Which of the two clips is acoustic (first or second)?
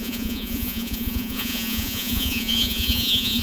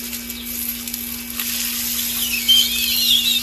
second